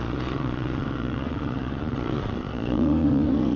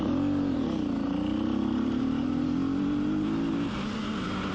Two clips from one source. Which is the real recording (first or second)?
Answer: second